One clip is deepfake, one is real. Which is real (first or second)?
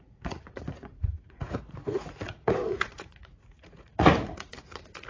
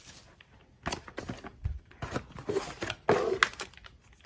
second